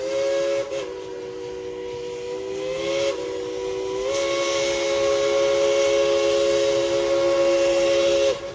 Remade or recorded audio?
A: recorded